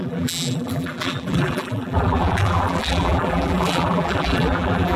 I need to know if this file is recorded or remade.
remade